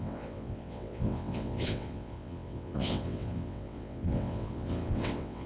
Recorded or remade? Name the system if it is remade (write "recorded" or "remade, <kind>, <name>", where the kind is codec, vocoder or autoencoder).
remade, vocoder, WaveNeXt